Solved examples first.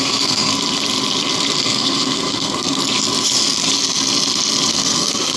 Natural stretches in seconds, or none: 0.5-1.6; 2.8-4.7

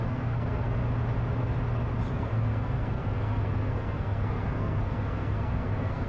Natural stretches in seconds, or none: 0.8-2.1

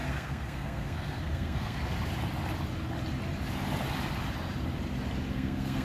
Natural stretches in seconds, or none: 1.8-5.3